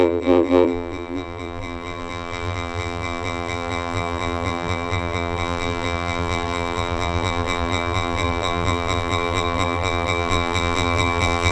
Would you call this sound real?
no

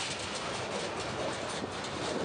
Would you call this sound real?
yes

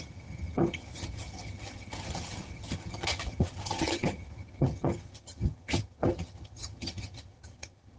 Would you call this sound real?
no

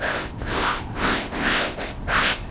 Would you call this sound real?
no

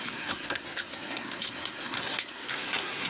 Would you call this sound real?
no